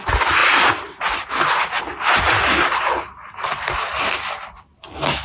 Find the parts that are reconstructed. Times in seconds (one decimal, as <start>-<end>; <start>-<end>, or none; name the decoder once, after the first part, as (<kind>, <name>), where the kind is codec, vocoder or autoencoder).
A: 0.4-1.8 (vocoder, BigVGAN v2); 3.9-4.8